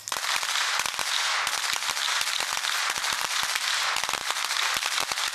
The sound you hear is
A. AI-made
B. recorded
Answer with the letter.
A